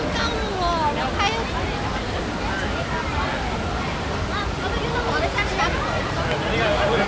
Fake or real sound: real